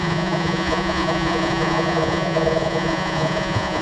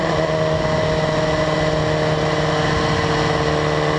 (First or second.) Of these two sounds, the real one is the second